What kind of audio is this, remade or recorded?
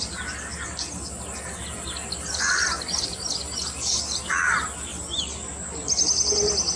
recorded